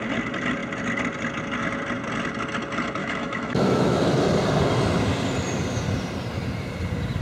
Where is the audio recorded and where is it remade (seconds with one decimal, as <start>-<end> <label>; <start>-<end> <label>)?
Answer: 0.0-3.0 recorded; 3.0-4.2 remade; 4.2-7.2 recorded